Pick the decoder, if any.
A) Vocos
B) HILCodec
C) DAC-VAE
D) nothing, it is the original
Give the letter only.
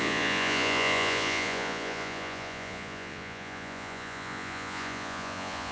A